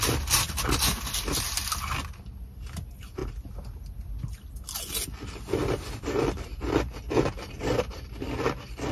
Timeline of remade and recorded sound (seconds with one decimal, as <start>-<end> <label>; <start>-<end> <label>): 0.0-8.9 recorded